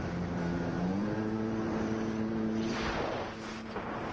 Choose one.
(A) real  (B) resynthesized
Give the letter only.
B